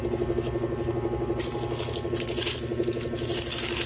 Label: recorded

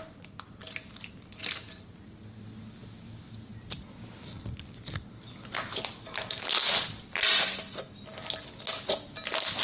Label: recorded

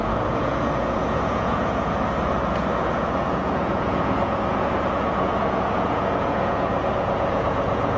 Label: remade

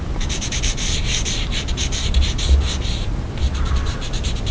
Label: recorded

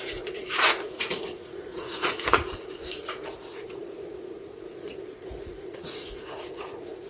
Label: remade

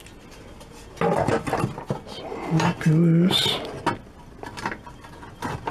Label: recorded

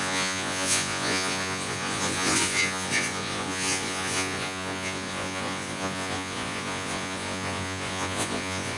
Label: remade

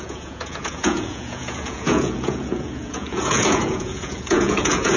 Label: remade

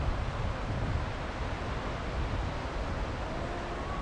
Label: recorded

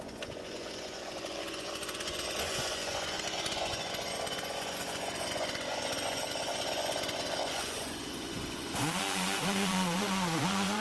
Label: remade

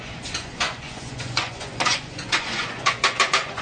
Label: remade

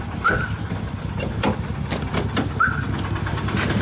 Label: recorded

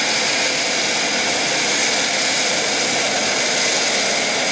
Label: recorded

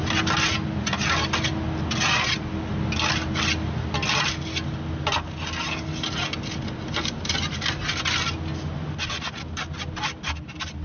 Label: recorded